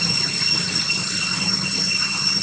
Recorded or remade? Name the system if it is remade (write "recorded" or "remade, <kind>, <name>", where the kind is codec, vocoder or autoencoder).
recorded